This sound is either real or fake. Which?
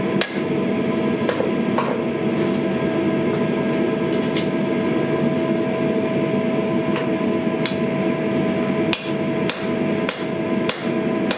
real